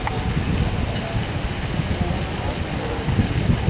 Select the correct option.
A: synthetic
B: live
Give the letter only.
B